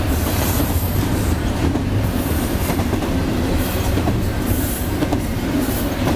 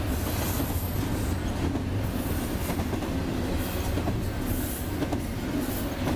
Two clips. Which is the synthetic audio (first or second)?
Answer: first